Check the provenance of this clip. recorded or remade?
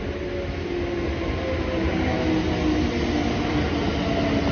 recorded